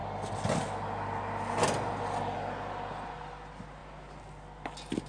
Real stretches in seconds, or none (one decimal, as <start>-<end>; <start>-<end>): 0.0-5.1